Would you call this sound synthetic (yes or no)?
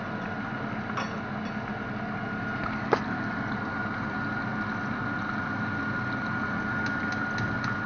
no